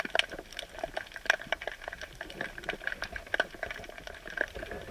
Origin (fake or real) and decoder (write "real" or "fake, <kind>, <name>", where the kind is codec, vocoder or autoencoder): real